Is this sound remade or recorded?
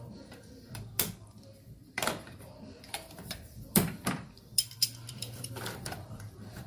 remade